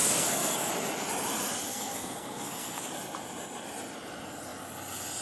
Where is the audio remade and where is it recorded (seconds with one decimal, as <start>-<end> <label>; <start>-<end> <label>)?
0.0-0.7 remade; 0.7-1.7 recorded; 1.7-2.9 remade; 2.9-5.2 recorded